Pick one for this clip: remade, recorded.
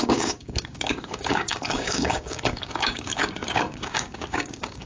remade